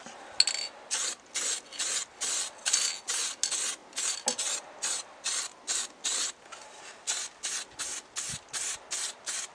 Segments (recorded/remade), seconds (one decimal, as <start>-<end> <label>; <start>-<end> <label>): 0.0-9.5 recorded